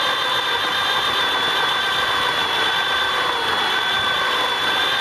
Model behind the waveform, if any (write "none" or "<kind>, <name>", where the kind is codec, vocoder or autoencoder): none